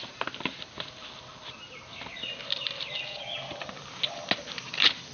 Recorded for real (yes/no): yes